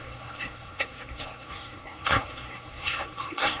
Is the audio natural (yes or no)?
no